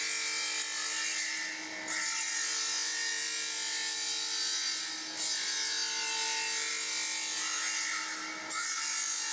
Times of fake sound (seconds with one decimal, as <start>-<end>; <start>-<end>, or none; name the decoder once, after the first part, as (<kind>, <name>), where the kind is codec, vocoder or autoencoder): none